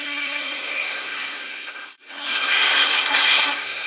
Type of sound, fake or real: fake